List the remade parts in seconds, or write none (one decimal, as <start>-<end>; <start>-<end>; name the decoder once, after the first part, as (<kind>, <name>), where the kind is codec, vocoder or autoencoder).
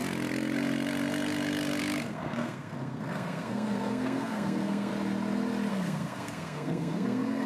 1.8-4.9 (codec, SNAC); 5.7-7.5